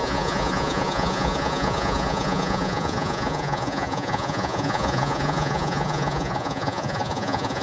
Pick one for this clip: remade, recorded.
remade